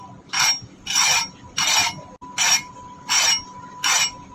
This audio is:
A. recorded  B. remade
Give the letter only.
A